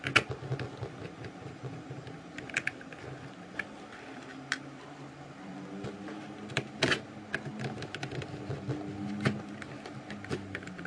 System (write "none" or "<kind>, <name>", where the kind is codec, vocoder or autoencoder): none